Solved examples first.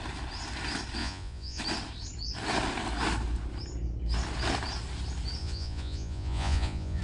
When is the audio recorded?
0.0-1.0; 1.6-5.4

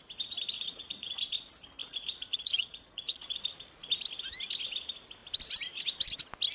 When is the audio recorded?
0.0-0.5; 1.2-1.8; 3.9-6.5

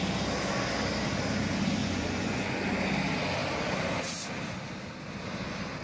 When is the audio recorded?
0.0-1.8; 2.6-5.8

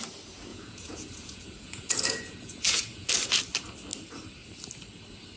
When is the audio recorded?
0.0-0.5; 3.1-5.4